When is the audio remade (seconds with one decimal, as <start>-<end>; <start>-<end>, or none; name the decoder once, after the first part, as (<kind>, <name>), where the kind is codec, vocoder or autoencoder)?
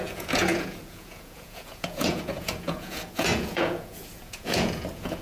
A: 0.0-5.2 (vocoder, Vocos)